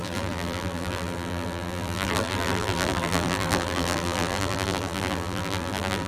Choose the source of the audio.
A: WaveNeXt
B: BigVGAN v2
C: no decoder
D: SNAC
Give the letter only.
B